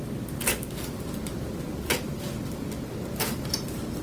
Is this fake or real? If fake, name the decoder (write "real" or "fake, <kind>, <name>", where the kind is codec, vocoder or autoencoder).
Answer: real